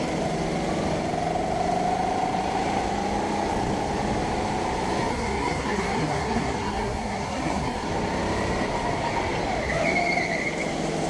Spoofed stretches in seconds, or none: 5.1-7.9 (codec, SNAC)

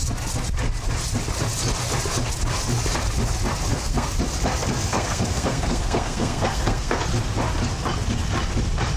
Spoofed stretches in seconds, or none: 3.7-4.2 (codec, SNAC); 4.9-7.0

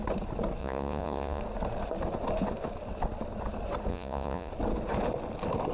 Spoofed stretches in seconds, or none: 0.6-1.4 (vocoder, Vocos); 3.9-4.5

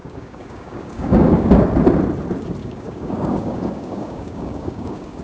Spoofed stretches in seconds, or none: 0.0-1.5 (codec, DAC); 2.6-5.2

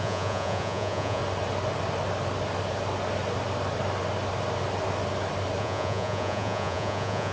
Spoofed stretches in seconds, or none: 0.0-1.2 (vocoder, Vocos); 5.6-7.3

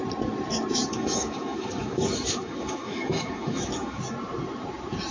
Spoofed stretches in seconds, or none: 0.9-4.0 (autoencoder, DAC-VAE)